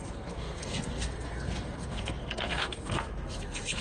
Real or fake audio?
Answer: fake